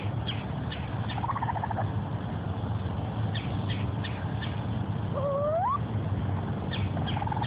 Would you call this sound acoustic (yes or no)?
yes